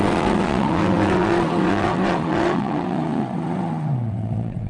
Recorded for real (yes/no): no